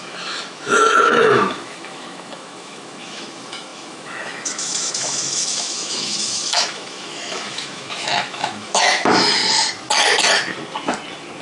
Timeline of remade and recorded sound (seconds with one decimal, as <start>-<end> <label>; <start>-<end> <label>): 0.0-9.4 remade; 9.4-11.4 recorded